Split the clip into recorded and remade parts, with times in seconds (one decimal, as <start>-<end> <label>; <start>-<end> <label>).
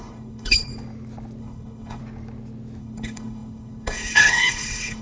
0.0-0.7 remade; 0.7-1.4 recorded; 1.4-2.0 remade; 2.0-2.8 recorded; 2.8-5.0 remade